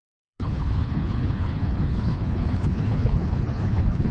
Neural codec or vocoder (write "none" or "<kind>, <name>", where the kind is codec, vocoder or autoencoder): codec, HILCodec